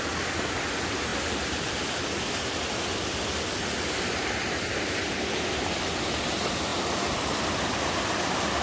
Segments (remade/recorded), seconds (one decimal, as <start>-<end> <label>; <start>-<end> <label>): 0.0-6.7 recorded; 6.7-8.6 remade

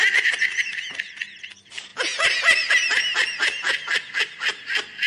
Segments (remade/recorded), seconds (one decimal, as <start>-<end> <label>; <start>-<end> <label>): 0.0-1.9 remade; 1.9-5.1 recorded

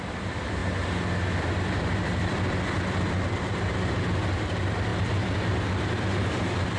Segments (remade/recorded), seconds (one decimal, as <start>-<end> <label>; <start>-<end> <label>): 0.0-0.6 remade; 0.6-1.5 recorded; 1.5-6.8 remade

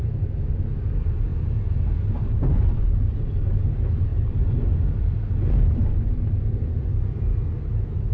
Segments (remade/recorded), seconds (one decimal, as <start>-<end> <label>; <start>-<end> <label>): 0.0-1.3 remade; 1.3-1.8 recorded; 1.8-7.3 remade; 7.3-8.1 recorded

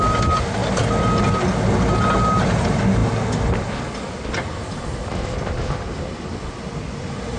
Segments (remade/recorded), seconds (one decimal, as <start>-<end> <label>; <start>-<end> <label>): 0.0-7.4 recorded